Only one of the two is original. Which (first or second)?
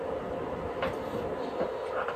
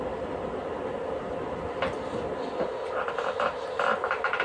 first